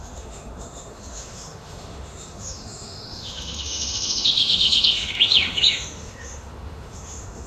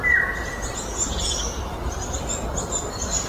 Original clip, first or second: second